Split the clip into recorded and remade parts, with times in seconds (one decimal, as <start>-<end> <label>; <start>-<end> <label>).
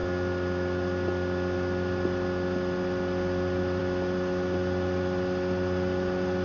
0.0-6.4 recorded